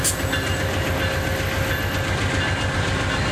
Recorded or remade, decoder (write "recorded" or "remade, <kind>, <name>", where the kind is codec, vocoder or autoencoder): recorded